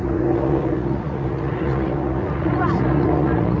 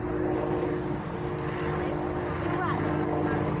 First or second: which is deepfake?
first